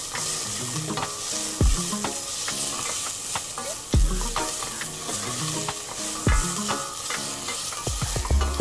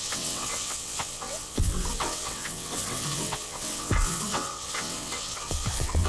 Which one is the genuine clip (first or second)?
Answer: first